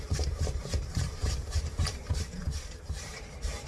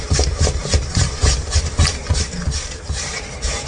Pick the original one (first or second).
second